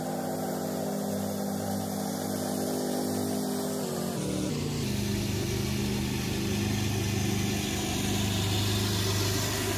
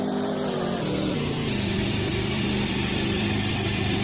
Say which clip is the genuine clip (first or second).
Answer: first